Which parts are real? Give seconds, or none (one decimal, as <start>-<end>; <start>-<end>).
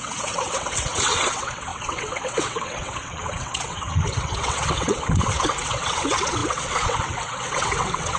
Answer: none